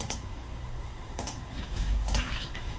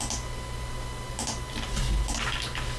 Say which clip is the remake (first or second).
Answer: first